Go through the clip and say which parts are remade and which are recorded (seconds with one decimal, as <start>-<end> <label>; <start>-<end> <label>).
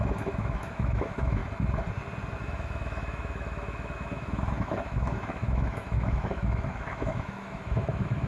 0.0-1.4 remade; 1.4-2.4 recorded; 2.4-8.3 remade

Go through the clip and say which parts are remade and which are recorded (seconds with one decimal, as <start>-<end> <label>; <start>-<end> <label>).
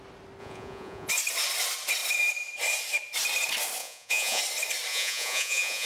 0.0-0.4 recorded; 0.4-1.1 remade; 1.1-3.8 recorded; 3.8-4.4 remade; 4.4-4.9 recorded; 4.9-5.9 remade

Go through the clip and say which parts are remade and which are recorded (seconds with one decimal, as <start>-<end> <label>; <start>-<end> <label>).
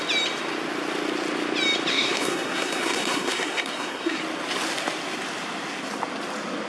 0.0-1.9 recorded; 1.9-4.2 remade; 4.2-6.7 recorded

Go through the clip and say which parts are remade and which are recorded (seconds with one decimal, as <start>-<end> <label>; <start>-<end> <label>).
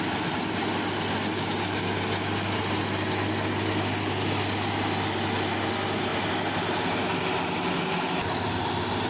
0.0-9.1 recorded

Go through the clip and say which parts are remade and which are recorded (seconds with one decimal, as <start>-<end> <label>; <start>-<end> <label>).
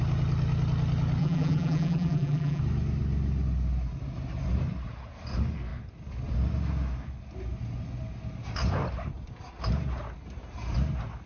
0.0-1.2 recorded; 1.2-2.6 remade; 2.6-11.3 recorded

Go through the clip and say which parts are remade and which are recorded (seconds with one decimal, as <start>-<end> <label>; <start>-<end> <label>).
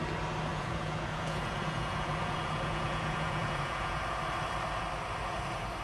0.0-0.5 recorded; 0.5-4.0 remade; 4.0-5.8 recorded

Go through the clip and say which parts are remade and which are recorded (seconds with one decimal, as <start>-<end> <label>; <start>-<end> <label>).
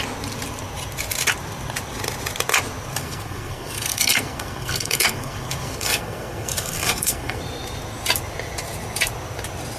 0.0-3.0 recorded; 3.0-7.4 remade; 7.4-9.8 recorded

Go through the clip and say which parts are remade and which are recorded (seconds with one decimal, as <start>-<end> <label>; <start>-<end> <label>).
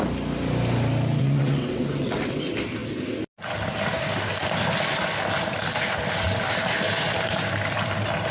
0.0-1.2 recorded; 1.2-2.4 remade; 2.4-8.3 recorded